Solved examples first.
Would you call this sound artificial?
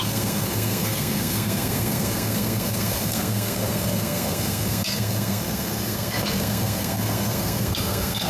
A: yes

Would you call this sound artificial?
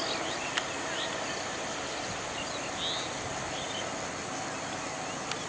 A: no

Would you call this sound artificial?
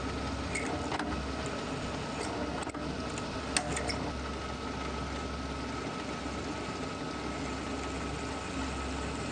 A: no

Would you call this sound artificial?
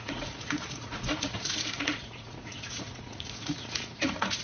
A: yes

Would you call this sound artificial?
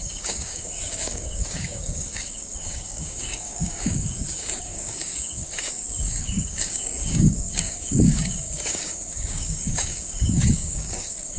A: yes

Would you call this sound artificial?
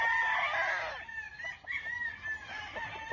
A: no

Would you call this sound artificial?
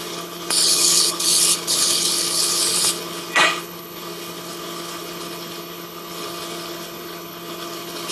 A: yes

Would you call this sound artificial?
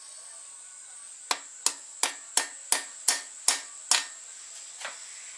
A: no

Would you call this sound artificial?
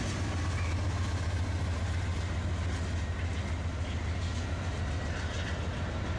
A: no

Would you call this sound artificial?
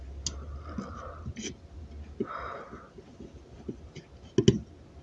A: no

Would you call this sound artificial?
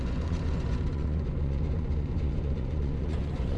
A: yes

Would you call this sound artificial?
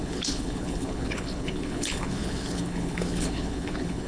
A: yes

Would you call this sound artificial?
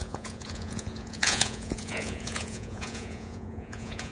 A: yes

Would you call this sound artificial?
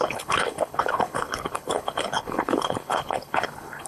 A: yes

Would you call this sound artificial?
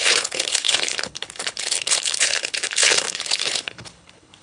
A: yes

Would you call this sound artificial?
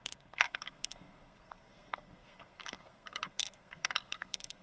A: yes